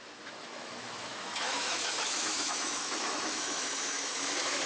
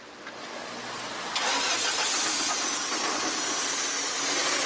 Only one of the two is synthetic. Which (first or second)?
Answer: first